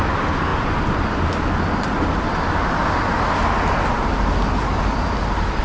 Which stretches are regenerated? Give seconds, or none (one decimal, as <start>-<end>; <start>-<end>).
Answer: none